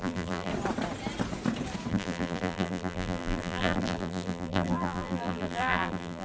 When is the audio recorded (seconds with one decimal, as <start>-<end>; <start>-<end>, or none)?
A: 0.5-1.9